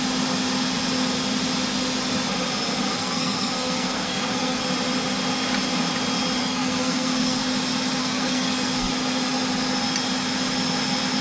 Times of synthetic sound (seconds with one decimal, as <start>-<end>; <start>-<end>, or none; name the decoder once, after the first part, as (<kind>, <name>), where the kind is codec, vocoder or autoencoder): 2.9-4.6 (codec, SNAC); 6.4-7.4; 8.0-8.9